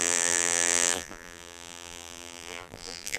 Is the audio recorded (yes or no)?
no